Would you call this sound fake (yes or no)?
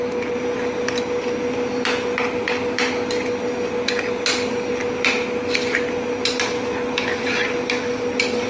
no